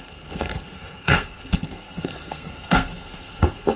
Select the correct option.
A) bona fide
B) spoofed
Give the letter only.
B